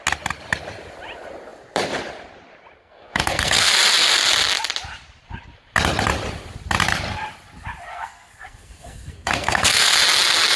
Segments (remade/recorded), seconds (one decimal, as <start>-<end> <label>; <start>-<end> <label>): 0.0-2.8 recorded; 2.8-3.7 remade; 3.7-7.9 recorded; 7.9-10.0 remade; 10.0-10.6 recorded